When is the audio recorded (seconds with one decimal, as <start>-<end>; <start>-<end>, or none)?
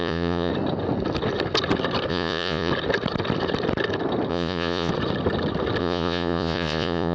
0.5-2.1; 2.7-4.3; 4.9-5.8